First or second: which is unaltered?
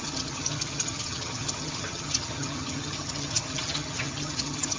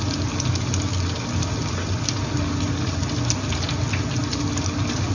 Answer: second